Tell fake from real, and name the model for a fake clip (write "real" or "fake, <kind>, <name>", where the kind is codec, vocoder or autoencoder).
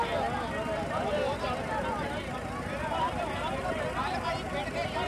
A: real